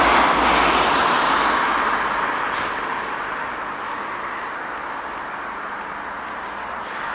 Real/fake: real